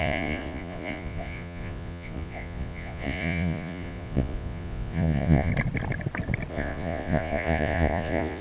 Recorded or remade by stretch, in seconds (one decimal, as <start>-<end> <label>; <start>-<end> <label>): 0.0-5.5 remade; 5.5-6.5 recorded; 6.5-8.4 remade